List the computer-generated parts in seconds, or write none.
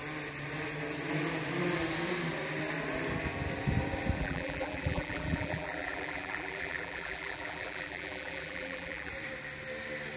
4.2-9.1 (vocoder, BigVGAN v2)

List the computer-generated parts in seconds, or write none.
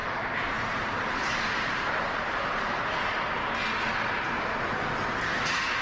0.0-3.0 (vocoder, BigVGAN v2)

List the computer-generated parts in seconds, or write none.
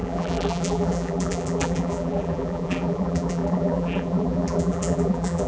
0.0-5.5 (vocoder, BigVGAN v2)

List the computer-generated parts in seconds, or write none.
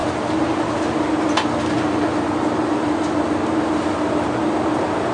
none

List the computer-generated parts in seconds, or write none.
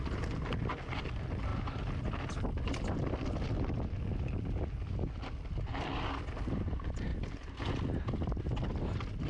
none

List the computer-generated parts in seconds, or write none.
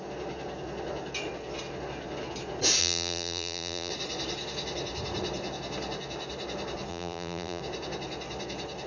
2.8-3.9 (vocoder, BigVGAN v2); 6.9-7.6